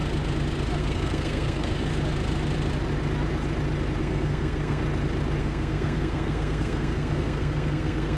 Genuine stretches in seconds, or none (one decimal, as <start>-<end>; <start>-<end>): 0.0-0.8; 1.9-4.0; 4.8-5.4